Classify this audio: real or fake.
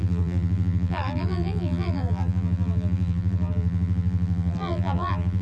fake